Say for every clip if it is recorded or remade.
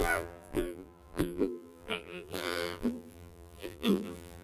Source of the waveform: remade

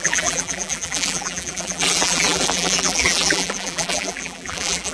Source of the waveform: remade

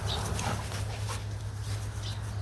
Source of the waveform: recorded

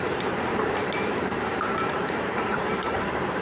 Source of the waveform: remade